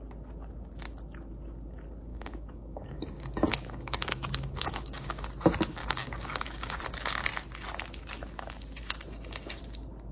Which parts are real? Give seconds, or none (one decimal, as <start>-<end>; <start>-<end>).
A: 0.0-2.1; 5.2-5.8; 6.8-10.1